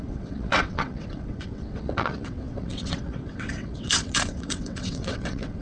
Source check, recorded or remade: remade